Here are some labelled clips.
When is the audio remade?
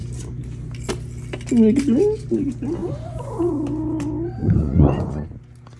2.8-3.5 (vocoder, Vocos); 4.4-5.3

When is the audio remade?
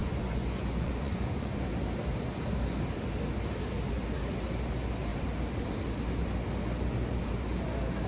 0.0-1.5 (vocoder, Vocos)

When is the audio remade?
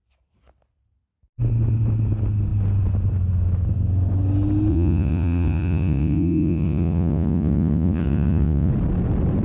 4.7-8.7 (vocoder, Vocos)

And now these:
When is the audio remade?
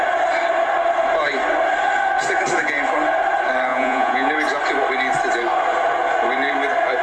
3.7-4.3 (vocoder, Vocos)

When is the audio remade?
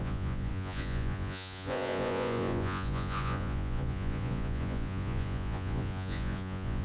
0.0-6.8 (vocoder, Vocos)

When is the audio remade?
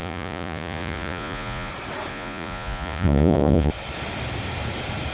0.0-1.7 (vocoder, Vocos); 2.1-3.7